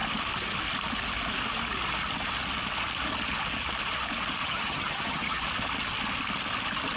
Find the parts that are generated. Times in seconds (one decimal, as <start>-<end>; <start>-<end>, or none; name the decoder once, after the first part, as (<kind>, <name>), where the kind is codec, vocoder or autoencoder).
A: 4.4-5.4 (vocoder, HiFi-GAN)